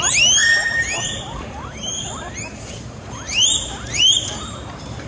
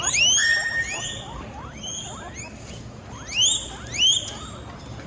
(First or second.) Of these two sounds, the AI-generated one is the first